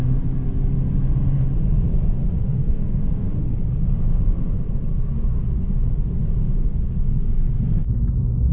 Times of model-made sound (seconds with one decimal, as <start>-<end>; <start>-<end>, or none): 2.6-3.3